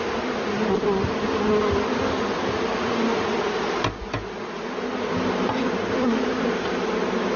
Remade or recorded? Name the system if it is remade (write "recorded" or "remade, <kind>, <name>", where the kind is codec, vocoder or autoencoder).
recorded